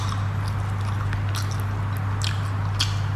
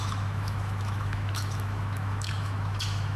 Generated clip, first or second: second